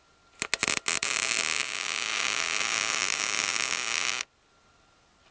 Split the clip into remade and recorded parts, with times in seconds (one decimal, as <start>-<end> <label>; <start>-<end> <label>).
0.0-5.3 recorded